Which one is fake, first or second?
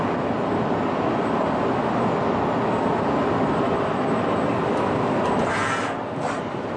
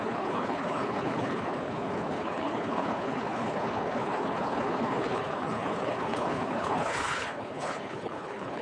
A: second